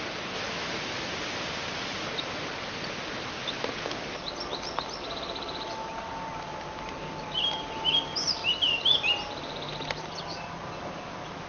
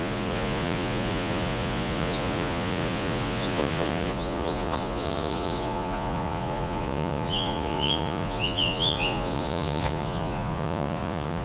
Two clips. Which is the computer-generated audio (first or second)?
second